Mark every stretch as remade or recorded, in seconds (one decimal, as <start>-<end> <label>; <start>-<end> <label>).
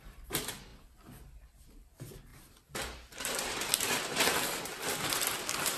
0.0-0.7 remade; 0.7-1.9 recorded; 1.9-5.8 remade